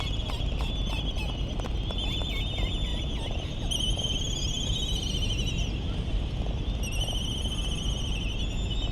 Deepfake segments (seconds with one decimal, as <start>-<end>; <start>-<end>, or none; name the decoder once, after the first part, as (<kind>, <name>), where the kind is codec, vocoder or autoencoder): 2.9-3.7 (vocoder, BigVGAN v2)